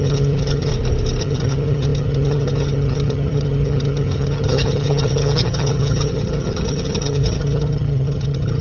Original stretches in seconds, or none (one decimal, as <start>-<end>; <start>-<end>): 0.7-1.2